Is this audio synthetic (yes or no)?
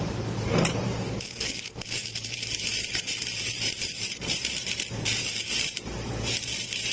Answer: yes